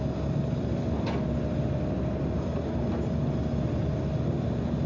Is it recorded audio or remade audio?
recorded